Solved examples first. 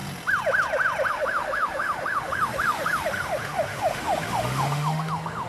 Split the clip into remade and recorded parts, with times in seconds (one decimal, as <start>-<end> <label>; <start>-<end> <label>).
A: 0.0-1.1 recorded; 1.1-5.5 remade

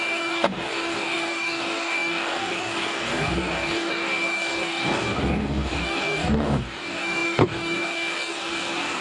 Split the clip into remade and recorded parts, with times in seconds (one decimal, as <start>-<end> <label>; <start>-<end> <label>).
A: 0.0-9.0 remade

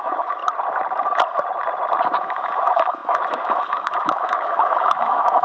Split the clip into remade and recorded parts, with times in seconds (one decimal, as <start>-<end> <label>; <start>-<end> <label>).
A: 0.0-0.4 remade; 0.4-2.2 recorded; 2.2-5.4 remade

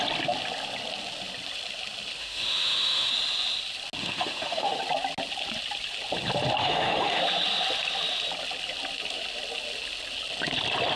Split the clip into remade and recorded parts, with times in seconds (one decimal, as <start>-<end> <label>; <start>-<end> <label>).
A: 0.0-2.2 recorded; 2.2-3.1 remade; 3.1-4.0 recorded; 4.0-4.8 remade; 4.8-6.6 recorded; 6.6-7.2 remade; 7.2-11.0 recorded

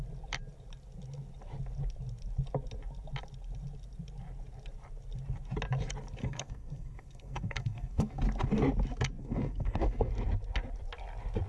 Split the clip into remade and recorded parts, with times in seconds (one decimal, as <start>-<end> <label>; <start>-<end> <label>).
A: 0.0-6.2 recorded; 6.2-8.2 remade; 8.2-9.2 recorded; 9.2-10.1 remade; 10.1-11.5 recorded

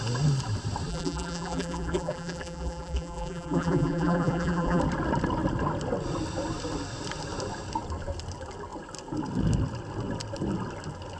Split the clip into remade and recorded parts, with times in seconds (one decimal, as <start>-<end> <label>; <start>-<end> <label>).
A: 0.0-0.9 recorded; 0.9-4.8 remade; 4.8-11.2 recorded